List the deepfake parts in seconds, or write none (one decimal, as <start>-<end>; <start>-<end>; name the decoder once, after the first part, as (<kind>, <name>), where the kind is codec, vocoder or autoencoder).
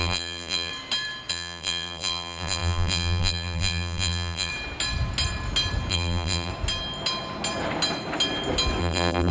0.0-0.7 (vocoder, BigVGAN v2); 1.3-4.5; 5.9-6.5; 8.8-9.3